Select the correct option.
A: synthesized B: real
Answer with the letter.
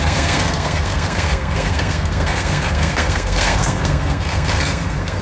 A